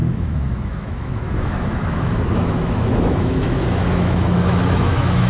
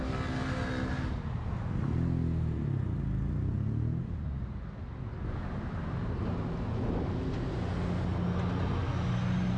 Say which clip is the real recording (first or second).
second